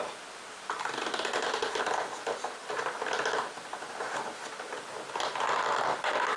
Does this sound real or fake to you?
real